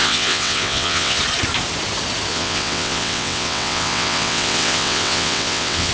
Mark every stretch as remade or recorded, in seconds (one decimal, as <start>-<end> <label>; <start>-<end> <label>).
0.0-1.2 remade; 1.2-2.3 recorded; 2.3-5.9 remade